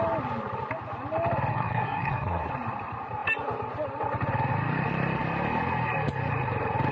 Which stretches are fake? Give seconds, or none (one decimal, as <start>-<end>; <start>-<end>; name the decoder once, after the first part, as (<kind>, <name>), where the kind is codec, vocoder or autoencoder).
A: 1.5-2.5 (codec, SNAC)